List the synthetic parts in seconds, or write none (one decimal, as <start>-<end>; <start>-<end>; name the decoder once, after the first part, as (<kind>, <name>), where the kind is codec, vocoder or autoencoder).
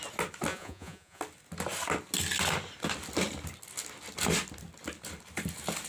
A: 0.5-1.2 (vocoder, Vocos)